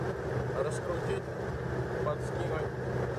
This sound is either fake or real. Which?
real